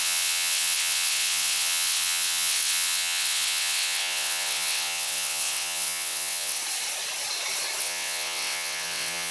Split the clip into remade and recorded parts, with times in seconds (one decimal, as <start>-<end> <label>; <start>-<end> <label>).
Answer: 0.0-6.6 remade; 6.6-7.8 recorded; 7.8-9.3 remade